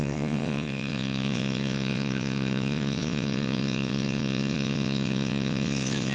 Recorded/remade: remade